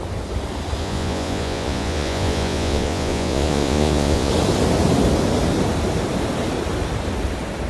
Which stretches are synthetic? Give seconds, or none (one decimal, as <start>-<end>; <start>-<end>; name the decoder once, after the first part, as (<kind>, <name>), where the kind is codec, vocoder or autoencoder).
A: 0.8-4.3 (vocoder, Vocos)